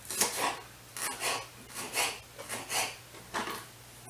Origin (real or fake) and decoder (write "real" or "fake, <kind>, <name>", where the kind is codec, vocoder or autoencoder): real